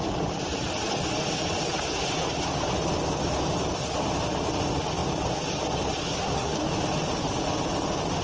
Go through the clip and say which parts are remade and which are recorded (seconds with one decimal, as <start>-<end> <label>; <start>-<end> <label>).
0.0-6.0 recorded; 6.0-6.7 remade; 6.7-8.2 recorded